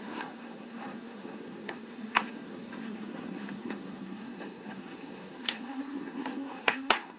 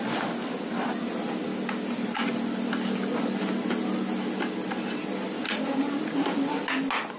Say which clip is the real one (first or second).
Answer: second